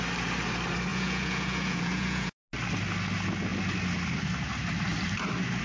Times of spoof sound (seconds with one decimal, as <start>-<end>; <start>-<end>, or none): 0.9-2.3